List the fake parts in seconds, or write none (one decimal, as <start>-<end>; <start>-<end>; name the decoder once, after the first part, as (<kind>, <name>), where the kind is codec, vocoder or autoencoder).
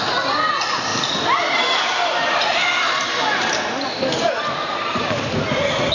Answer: none